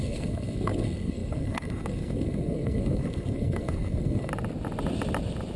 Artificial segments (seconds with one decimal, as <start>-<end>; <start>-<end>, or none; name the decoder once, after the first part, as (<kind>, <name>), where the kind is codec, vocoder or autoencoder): 0.0-4.3 (codec, SNAC)

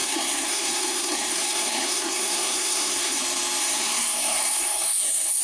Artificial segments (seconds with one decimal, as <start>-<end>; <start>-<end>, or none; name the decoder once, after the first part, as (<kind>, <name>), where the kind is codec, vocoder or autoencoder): 0.0-3.2 (codec, SNAC); 3.6-5.4

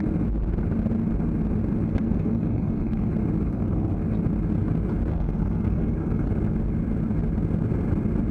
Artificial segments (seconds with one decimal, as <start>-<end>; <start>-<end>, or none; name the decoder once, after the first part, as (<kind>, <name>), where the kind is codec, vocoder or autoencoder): 1.9-3.1 (codec, SNAC); 3.5-4.0; 5.1-6.3

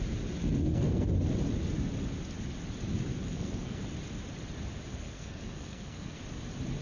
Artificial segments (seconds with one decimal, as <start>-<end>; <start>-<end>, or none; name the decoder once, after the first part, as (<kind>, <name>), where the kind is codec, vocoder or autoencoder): 0.4-1.1 (codec, SNAC); 3.1-3.8; 4.9-6.2